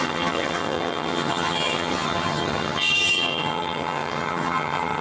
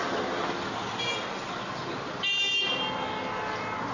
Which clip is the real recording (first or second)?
second